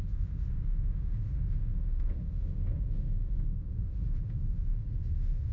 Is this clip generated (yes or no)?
yes